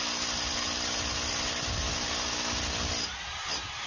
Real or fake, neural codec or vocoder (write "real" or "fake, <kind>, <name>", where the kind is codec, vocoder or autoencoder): real